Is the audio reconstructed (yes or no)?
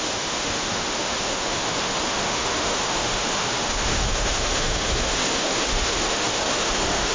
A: yes